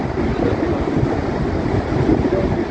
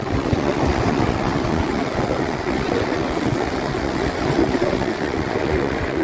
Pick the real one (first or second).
first